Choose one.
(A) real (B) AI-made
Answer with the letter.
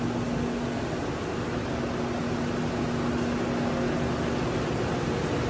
A